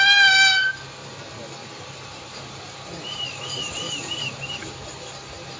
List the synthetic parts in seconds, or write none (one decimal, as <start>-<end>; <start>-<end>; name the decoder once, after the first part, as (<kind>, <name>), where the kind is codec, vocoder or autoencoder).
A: 1.6-4.7 (vocoder, BigVGAN v2)